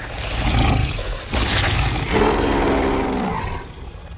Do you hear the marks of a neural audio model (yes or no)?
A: no